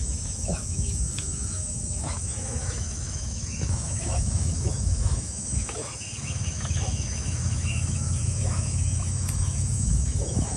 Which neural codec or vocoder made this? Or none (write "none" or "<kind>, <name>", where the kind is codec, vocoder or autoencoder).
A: autoencoder, DAC-VAE